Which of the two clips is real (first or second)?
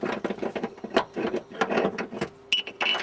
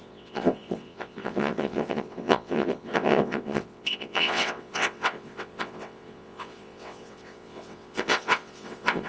first